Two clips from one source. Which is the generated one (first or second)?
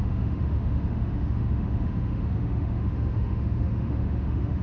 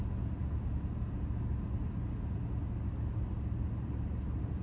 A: first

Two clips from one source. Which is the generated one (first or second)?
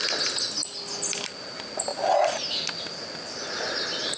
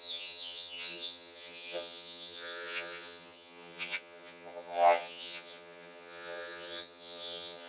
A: second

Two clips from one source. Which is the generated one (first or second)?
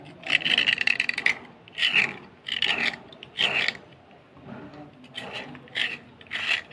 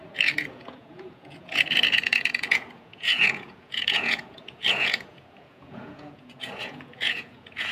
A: second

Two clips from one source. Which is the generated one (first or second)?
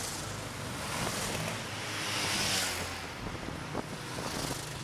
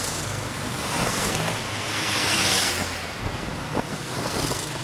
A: second